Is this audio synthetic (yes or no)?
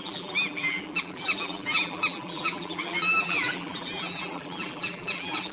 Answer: yes